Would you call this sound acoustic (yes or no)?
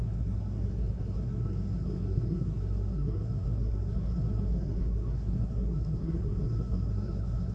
no